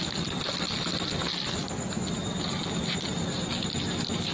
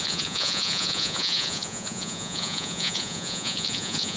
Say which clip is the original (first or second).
first